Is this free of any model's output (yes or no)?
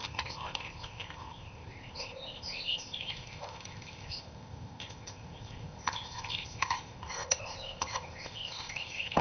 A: no